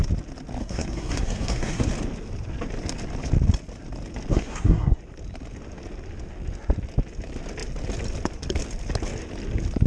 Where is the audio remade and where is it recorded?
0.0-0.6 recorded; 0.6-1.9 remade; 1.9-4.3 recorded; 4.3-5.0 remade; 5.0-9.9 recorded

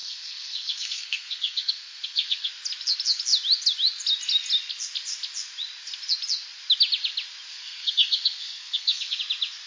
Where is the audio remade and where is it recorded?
0.0-2.5 remade; 2.5-7.5 recorded; 7.5-9.2 remade; 9.2-9.7 recorded